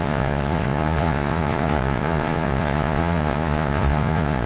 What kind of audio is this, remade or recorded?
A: remade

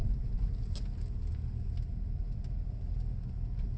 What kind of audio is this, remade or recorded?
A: recorded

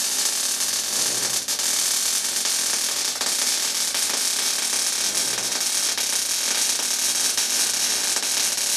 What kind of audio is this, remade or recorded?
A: recorded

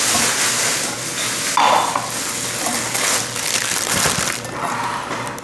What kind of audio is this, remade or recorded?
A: recorded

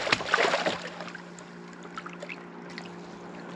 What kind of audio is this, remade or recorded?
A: recorded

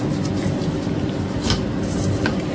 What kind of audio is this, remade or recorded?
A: recorded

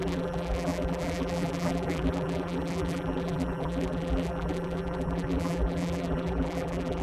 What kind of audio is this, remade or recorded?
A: remade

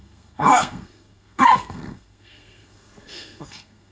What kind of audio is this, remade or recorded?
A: remade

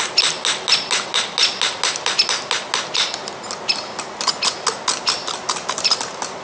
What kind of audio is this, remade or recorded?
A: recorded